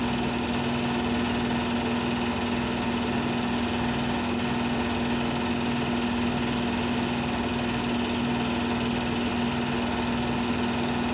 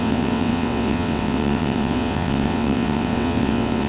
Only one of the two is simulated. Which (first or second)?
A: second